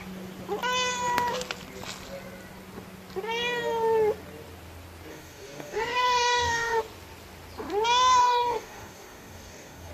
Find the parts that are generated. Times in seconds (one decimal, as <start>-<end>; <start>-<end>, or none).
5.1-6.8; 8.2-9.9